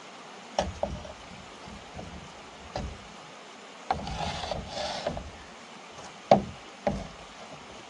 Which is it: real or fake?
real